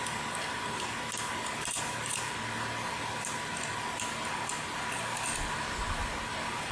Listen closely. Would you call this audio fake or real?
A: real